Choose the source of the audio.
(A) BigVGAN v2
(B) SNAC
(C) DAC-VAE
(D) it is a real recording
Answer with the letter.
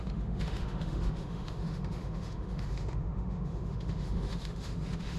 C